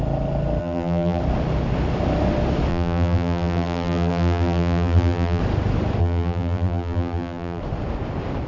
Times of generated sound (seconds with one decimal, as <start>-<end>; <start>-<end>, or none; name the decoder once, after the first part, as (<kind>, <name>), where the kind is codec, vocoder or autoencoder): 0.6-1.2 (vocoder, BigVGAN v2); 2.7-5.4; 6.0-7.6